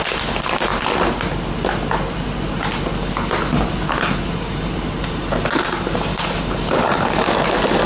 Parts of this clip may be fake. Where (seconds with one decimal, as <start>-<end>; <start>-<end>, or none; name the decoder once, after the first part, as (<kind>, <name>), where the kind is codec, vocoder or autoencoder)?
4.5-5.2 (vocoder, BigVGAN v2); 6.1-7.3